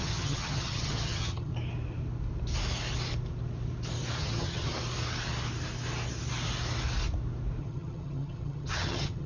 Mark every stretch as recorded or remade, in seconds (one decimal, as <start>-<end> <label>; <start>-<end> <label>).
0.0-1.5 remade; 1.5-4.2 recorded; 4.2-4.7 remade; 4.7-7.6 recorded; 7.6-9.3 remade